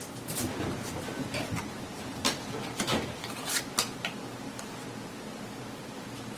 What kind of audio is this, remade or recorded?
recorded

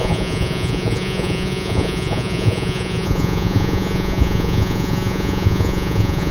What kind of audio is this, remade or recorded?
remade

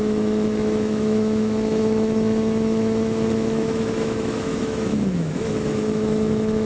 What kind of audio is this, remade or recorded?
remade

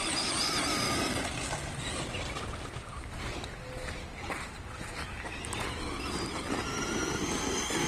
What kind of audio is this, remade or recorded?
recorded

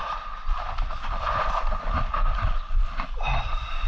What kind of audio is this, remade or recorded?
remade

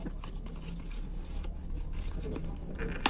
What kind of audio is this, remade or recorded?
recorded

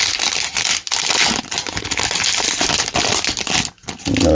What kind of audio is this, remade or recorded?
recorded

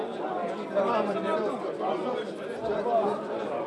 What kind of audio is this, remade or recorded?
recorded